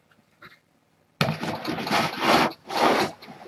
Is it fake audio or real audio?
real